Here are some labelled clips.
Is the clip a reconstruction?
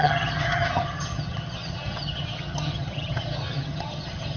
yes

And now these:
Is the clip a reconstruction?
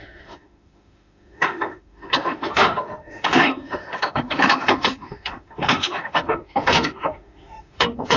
yes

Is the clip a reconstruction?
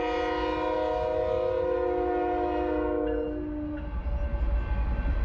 no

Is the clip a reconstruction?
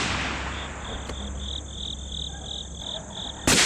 no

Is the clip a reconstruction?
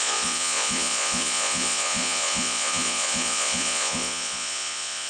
yes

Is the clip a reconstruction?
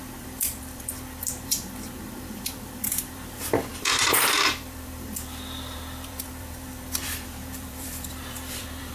yes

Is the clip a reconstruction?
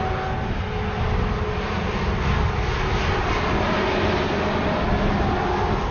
no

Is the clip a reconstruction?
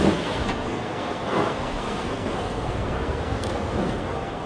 yes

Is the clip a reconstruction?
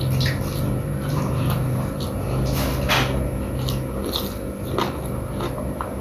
no